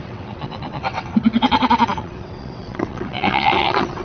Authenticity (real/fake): fake